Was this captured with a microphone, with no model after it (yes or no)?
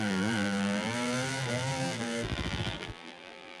no